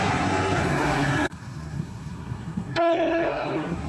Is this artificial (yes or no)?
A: yes